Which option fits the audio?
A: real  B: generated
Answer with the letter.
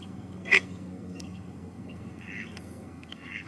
B